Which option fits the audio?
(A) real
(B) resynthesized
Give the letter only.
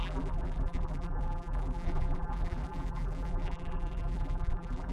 B